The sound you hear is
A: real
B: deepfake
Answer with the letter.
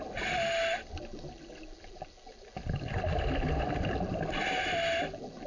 A